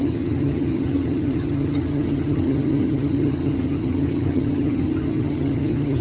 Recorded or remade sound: remade